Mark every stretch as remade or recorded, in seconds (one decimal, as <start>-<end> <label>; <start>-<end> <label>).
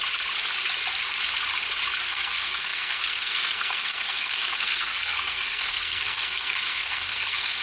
0.0-2.0 recorded; 2.0-7.6 remade